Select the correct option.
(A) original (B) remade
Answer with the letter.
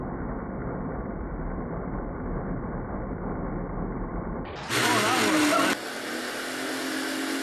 A